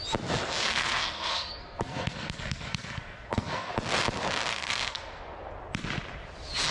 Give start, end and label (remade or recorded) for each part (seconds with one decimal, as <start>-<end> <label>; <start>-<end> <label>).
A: 0.0-0.7 recorded; 0.7-3.7 remade; 3.7-4.5 recorded; 4.5-5.2 remade; 5.2-6.7 recorded